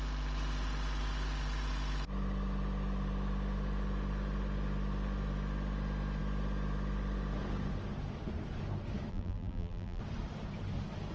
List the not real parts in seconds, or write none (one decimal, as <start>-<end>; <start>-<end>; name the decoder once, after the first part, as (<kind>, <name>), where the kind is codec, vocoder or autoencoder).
9.1-10.0 (vocoder, BigVGAN v2)